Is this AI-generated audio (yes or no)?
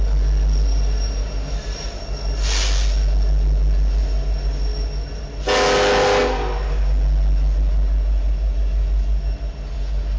no